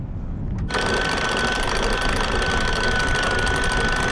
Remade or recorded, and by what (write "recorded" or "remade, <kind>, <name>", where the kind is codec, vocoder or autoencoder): recorded